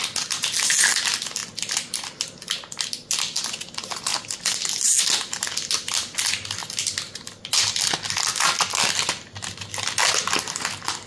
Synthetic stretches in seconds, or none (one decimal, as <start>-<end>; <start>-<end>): none